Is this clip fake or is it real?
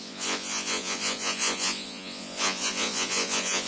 fake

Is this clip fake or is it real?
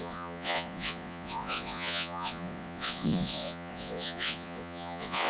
fake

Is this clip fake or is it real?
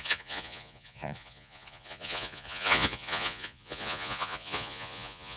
fake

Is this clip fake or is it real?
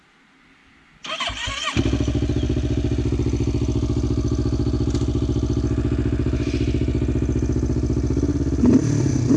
real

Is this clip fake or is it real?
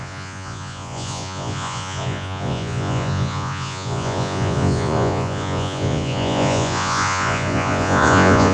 fake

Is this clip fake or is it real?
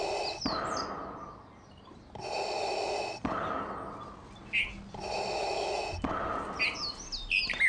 real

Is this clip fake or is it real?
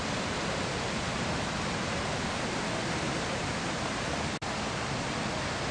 real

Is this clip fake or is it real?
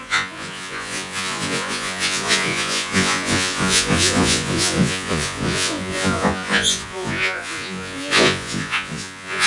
fake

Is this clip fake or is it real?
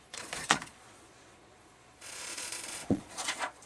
fake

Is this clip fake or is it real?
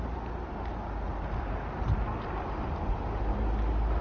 real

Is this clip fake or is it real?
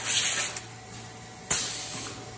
real